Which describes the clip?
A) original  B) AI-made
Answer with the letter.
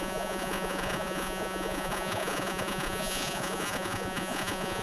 B